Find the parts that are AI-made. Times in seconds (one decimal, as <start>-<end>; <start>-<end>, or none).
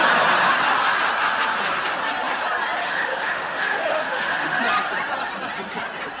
2.8-4.6